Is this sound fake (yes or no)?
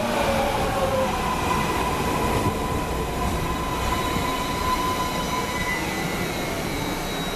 no